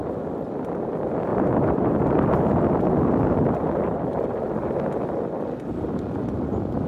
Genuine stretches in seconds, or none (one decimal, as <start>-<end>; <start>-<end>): 0.0-1.3; 2.0-6.9